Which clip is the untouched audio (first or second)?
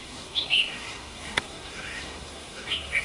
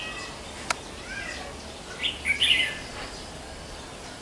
second